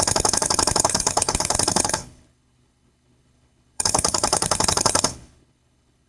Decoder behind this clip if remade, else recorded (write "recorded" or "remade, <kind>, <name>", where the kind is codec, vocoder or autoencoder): remade, codec, HILCodec